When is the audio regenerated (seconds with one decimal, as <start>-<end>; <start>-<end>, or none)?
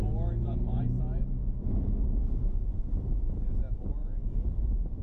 0.0-1.0; 1.4-2.8; 4.0-5.0